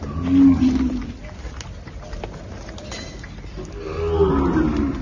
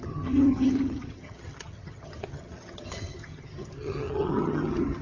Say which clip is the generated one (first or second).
second